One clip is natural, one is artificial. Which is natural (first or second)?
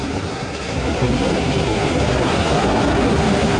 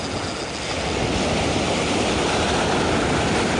second